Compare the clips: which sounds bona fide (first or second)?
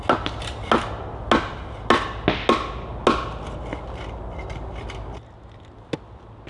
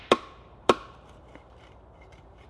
first